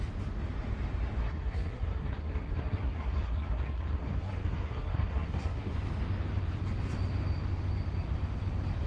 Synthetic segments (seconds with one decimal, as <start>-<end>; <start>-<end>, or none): 1.2-5.7